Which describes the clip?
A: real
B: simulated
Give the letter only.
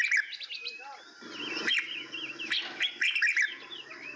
A